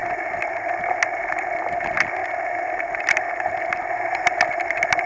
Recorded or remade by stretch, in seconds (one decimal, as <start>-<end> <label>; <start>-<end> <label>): 0.0-0.7 remade; 0.7-5.1 recorded